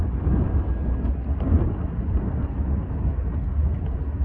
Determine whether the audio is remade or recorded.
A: recorded